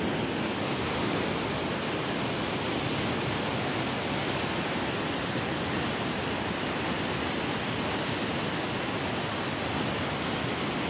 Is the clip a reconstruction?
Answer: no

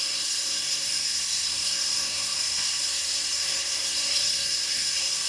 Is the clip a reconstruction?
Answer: yes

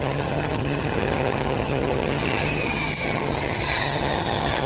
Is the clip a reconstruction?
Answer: yes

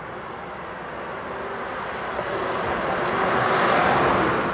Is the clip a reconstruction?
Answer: no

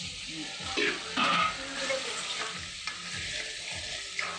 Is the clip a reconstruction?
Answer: no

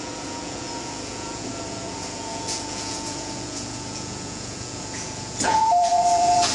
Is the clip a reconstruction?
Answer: yes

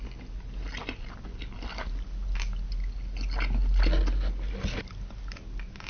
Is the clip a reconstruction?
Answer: no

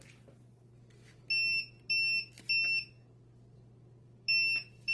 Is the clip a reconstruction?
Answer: no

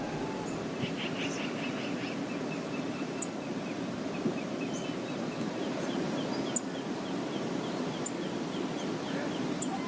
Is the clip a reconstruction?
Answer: no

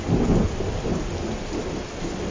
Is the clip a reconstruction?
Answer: no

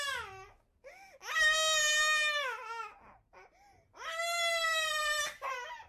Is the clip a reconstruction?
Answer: no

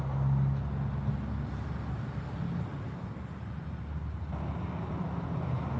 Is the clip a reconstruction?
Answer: no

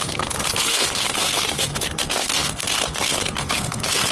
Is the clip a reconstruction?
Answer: yes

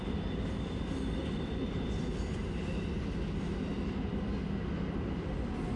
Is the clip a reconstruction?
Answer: no